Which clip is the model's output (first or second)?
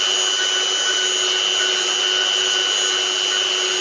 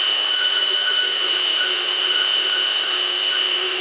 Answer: second